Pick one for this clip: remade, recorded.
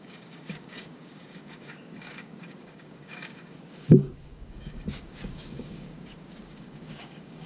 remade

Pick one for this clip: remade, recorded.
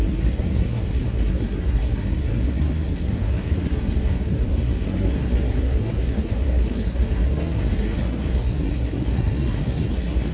remade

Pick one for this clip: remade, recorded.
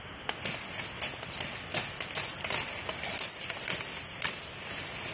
recorded